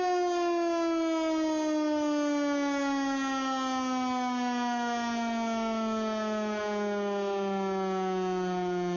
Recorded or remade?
recorded